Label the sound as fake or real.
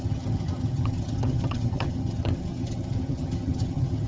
fake